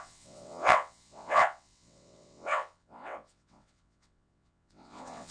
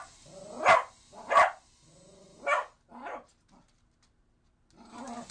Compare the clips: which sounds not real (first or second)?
first